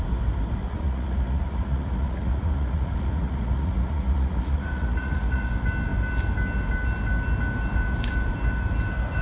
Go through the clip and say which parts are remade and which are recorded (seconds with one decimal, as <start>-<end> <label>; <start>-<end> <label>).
0.0-0.6 recorded; 0.6-5.5 remade; 5.5-9.2 recorded